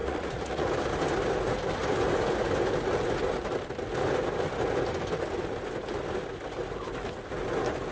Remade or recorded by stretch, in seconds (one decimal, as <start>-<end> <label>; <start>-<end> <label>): 0.0-0.7 remade; 0.7-7.9 recorded